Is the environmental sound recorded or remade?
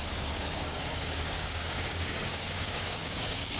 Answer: remade